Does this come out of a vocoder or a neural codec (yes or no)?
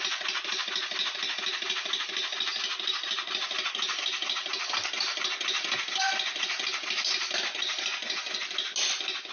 no